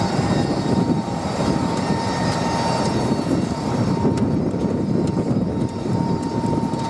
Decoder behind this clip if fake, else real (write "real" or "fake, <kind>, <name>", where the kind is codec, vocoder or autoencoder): fake, vocoder, BigVGAN v2